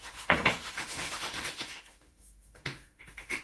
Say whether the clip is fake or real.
fake